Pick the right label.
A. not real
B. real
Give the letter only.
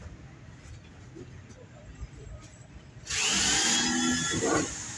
B